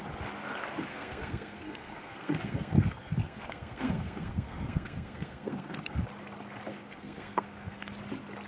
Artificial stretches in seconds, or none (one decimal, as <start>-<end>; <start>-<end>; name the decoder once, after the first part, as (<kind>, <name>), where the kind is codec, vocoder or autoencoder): 0.9-6.0 (codec, SNAC); 6.7-7.9